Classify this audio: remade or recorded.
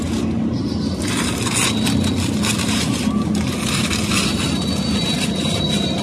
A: recorded